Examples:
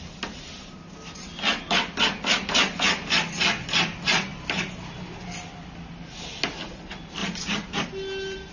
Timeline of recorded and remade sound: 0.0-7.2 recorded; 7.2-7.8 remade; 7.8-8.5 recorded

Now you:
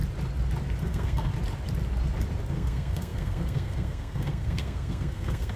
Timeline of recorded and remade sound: 0.0-0.8 recorded; 0.8-1.3 remade; 1.3-2.5 recorded; 2.5-5.6 remade

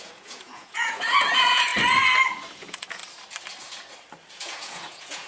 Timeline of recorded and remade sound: 0.0-1.7 remade; 1.7-2.5 recorded; 2.5-3.0 remade; 3.0-4.3 recorded; 4.3-5.3 remade

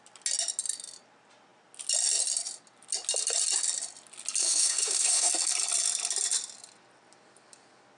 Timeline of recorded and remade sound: 0.0-4.4 recorded; 4.4-5.3 remade; 5.3-8.0 recorded

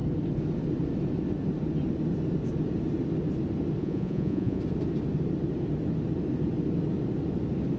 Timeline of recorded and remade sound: 0.0-3.8 recorded; 3.8-4.6 remade; 4.6-7.8 recorded

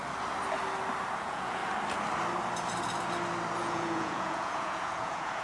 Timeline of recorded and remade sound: 0.0-1.2 recorded; 1.2-1.6 remade; 1.6-3.6 recorded; 3.6-5.4 remade

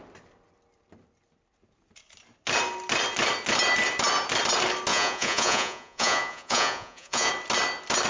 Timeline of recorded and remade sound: 0.0-4.9 recorded; 4.9-7.3 remade; 7.3-8.1 recorded

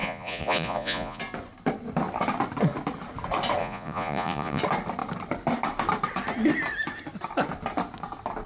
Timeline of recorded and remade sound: 0.0-1.2 remade; 1.2-3.6 recorded; 3.6-4.6 remade; 4.6-8.5 recorded